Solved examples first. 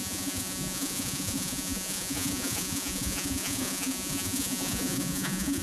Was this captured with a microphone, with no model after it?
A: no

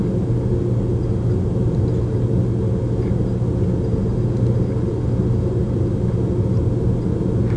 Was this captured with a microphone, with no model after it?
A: yes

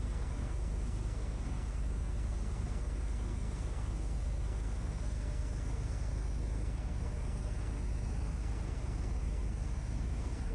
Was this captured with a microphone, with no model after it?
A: no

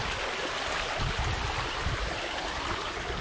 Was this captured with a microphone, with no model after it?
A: yes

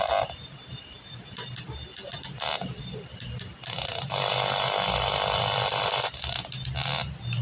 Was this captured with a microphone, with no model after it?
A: yes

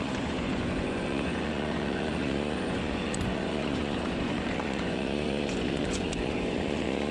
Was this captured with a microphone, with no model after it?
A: no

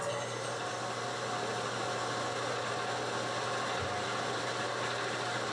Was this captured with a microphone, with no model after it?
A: yes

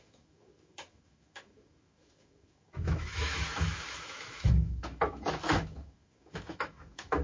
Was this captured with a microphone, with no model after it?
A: no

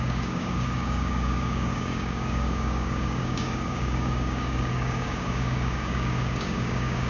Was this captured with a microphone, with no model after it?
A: no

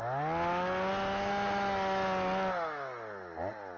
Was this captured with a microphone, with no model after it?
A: yes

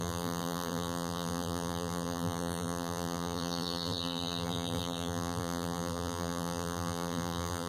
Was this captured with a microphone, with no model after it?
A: no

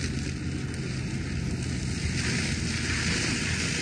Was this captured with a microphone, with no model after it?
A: yes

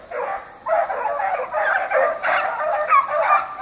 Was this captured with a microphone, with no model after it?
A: yes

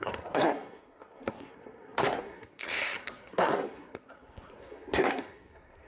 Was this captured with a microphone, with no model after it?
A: no